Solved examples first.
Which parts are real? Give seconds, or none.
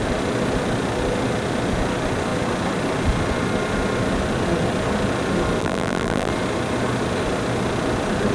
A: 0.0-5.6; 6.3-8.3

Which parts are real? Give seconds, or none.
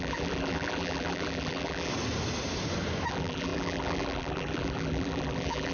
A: 1.9-3.1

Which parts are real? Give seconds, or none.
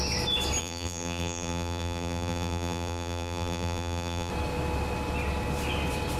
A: 0.0-0.6; 4.3-6.2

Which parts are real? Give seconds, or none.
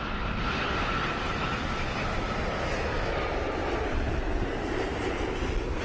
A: 0.0-3.6; 5.2-5.8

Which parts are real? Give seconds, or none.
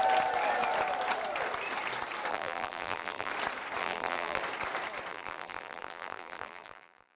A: 0.0-2.3; 3.3-3.8; 4.4-5.1